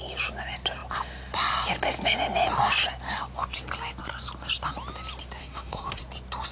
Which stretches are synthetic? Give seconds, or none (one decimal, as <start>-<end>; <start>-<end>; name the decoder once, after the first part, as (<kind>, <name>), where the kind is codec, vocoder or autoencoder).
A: 5.4-6.0 (codec, SNAC)